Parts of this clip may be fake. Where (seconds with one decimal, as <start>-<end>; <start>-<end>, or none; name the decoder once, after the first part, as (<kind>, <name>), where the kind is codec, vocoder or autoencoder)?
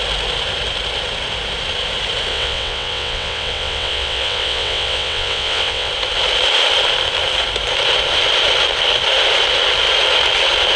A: 2.3-5.9 (vocoder, WaveNeXt)